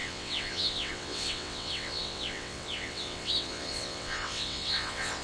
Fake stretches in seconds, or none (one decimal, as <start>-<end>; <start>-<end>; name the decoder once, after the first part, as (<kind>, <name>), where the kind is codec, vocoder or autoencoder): 0.0-5.2 (vocoder, WaveNeXt)